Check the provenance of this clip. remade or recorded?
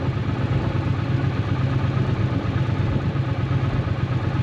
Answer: recorded